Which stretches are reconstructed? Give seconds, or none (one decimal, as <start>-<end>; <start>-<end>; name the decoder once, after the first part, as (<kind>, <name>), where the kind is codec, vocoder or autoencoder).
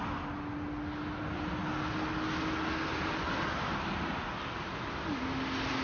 none